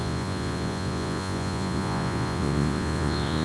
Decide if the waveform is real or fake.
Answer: fake